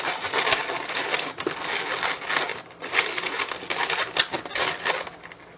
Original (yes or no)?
yes